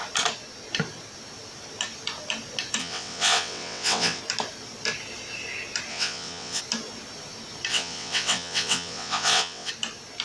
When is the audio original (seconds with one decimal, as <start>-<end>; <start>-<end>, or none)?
0.0-2.8; 4.2-5.9; 6.6-7.7; 9.7-10.2